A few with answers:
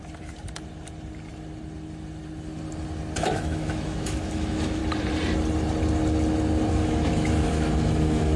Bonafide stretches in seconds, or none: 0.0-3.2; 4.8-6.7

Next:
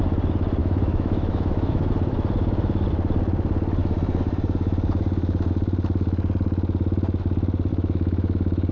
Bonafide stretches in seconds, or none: 0.0-0.6; 1.9-7.7